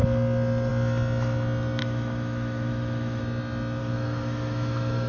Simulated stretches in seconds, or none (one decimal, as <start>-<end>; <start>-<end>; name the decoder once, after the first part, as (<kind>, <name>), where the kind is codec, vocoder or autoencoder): 1.8-3.2 (autoencoder, DAC-VAE); 3.8-5.1